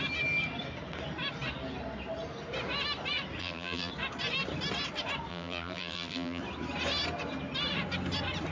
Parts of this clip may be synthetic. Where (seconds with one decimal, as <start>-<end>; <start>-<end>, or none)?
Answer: 3.4-3.9; 5.3-6.4